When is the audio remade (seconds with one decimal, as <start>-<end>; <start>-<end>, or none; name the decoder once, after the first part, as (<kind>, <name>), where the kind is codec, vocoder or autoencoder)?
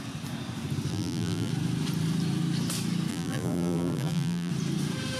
0.9-1.5 (vocoder, BigVGAN v2); 3.1-4.5